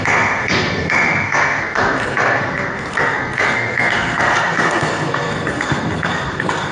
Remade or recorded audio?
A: remade